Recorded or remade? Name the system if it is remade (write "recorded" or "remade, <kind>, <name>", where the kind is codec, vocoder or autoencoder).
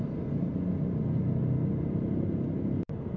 recorded